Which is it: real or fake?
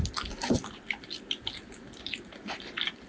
real